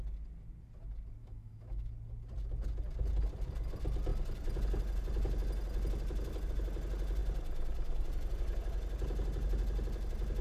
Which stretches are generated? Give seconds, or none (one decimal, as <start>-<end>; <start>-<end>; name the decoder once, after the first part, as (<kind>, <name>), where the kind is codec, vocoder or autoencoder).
1.2-1.9 (autoencoder, DAC-VAE)